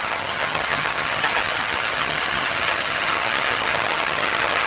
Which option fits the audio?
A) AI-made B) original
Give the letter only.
A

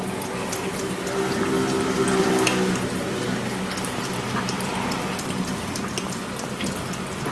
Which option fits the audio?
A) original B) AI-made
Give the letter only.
A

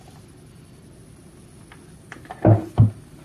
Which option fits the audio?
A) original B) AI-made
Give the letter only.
A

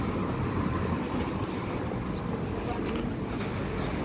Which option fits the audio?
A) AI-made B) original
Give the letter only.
B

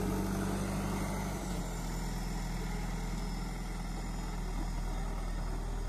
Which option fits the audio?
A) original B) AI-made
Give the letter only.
A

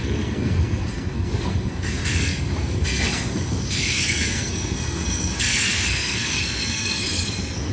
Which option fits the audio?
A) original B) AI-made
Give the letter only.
B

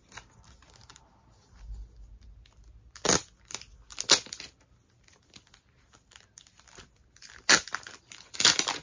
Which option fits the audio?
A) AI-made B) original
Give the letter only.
B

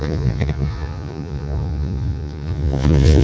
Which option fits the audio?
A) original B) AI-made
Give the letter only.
B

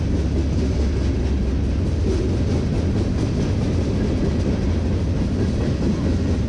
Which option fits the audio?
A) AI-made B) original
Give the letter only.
B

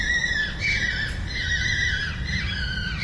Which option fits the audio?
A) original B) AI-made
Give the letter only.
A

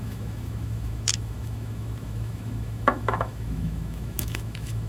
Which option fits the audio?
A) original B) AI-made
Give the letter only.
B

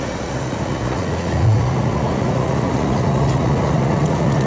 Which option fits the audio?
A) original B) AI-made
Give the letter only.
B